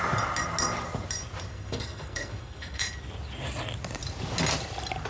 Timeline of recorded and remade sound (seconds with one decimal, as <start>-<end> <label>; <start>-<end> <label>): 0.0-1.5 recorded; 1.5-2.8 remade; 2.8-5.1 recorded

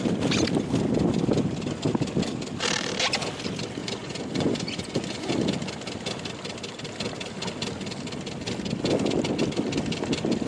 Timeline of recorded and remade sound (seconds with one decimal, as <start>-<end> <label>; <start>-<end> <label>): 0.0-3.8 recorded; 3.8-5.3 remade; 5.3-10.5 recorded